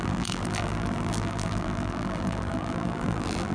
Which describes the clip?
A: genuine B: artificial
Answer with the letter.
B